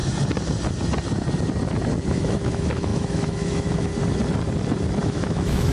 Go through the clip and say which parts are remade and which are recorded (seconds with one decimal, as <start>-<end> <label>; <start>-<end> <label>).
0.0-2.1 recorded; 2.1-3.9 remade; 3.9-5.0 recorded; 5.0-5.7 remade